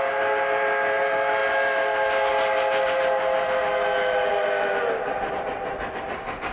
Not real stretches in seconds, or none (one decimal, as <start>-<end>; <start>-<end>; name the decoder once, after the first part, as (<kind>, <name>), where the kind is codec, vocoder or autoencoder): none